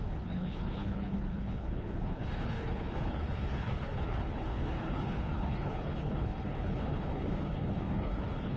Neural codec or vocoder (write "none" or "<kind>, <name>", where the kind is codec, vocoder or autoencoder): codec, HILCodec